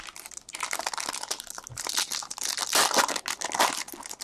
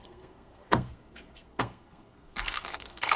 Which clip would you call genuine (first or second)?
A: first